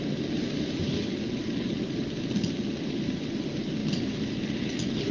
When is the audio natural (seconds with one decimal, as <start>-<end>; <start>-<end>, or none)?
0.0-5.1